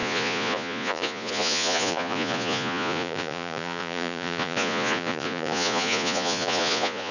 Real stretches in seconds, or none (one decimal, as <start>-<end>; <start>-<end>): none